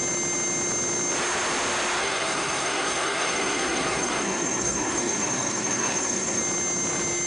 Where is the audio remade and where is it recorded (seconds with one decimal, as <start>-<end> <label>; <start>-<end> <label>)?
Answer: 0.0-2.0 recorded; 2.0-6.4 remade; 6.4-7.3 recorded